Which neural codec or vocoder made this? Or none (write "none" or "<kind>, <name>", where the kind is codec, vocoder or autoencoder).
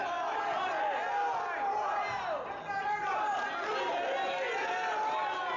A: none